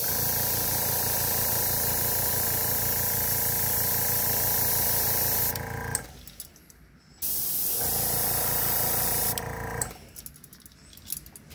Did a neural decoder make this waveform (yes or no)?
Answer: no